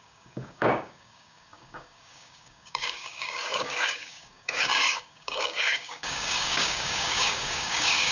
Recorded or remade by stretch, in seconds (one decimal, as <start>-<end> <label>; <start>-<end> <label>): 0.0-8.1 remade